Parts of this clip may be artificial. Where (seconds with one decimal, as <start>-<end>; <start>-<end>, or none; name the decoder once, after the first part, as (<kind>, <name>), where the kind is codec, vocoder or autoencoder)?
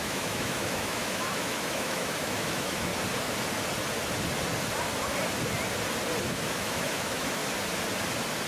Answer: 0.0-2.9 (autoencoder, DAC-VAE); 6.3-7.4